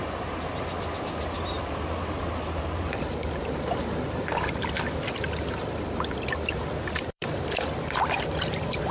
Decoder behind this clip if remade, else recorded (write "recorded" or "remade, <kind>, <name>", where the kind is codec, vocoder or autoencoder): remade, vocoder, BigVGAN v2